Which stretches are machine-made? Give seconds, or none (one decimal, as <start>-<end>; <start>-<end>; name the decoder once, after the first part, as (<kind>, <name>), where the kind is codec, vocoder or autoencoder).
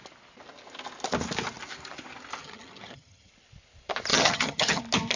2.4-3.3 (vocoder, HiFi-GAN); 4.1-4.8